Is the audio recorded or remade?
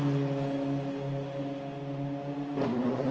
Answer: recorded